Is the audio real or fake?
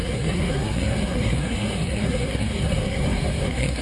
fake